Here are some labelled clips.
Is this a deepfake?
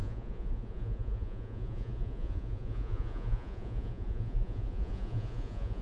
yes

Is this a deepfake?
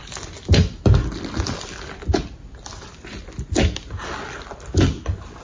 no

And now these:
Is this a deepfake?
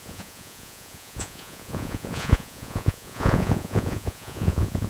yes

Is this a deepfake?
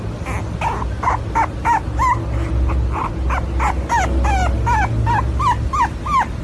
no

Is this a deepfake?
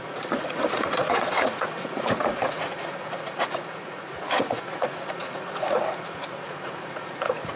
yes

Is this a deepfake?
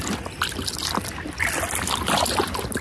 no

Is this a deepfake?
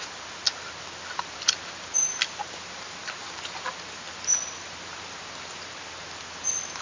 no